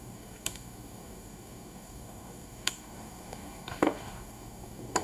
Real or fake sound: fake